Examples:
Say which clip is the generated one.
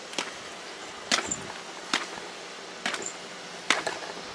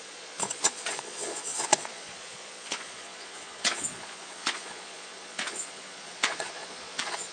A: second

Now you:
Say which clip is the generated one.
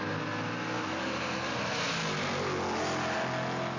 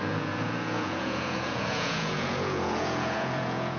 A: second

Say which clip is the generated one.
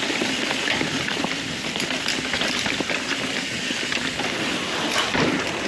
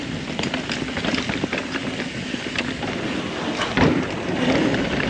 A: first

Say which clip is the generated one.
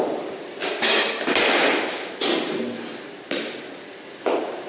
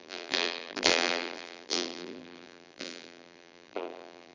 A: second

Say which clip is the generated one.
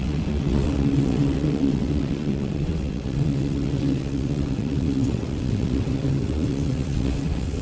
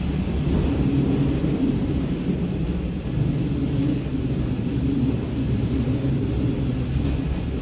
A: first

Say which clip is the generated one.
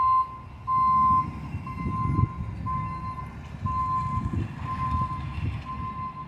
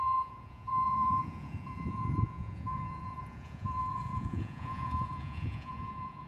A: second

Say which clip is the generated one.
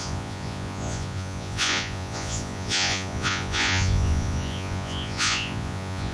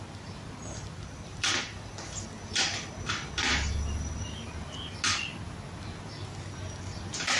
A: first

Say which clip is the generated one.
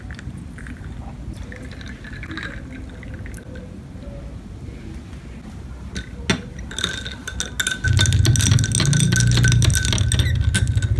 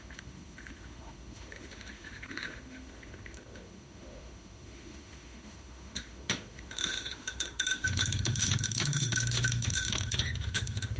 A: second